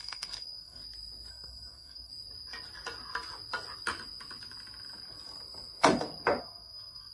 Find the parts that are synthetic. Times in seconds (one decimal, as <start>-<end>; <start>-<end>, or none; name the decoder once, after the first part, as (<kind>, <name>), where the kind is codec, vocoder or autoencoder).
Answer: 0.0-0.8 (codec, SNAC); 1.3-2.1; 6.4-7.1